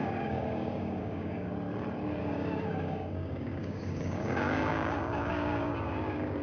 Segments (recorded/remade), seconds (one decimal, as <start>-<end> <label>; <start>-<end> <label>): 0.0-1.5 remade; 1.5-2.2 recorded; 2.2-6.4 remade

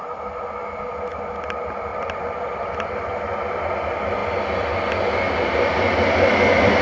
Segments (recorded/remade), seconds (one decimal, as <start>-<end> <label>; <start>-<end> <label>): 0.0-1.9 recorded; 1.9-3.2 remade; 3.2-6.8 recorded

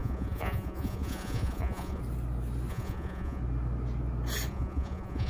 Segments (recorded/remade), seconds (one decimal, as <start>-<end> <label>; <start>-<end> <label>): 0.0-2.0 remade; 2.0-2.7 recorded; 2.7-3.4 remade; 3.4-4.5 recorded; 4.5-5.3 remade

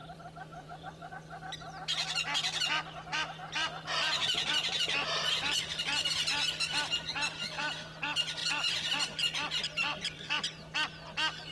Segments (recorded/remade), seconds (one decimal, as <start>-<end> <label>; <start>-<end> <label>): 0.0-1.1 remade; 1.1-4.2 recorded; 4.2-4.8 remade; 4.8-8.4 recorded; 8.4-10.3 remade; 10.3-11.5 recorded

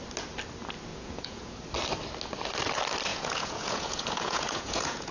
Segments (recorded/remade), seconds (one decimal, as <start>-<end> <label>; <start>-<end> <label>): 0.0-0.9 recorded; 0.9-1.5 remade; 1.5-3.1 recorded; 3.1-5.1 remade

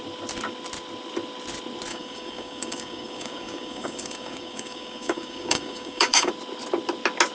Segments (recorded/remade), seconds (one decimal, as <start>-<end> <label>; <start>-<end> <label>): 0.0-1.9 recorded; 1.9-6.3 remade; 6.3-7.3 recorded